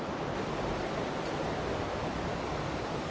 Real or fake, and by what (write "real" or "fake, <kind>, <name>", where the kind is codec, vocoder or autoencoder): real